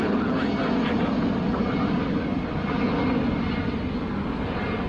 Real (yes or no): yes